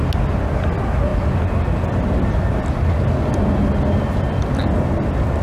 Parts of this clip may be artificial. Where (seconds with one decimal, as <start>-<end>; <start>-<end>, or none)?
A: none